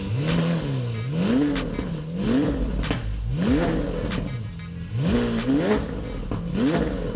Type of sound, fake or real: real